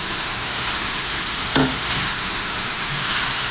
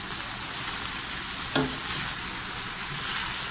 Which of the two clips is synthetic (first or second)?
first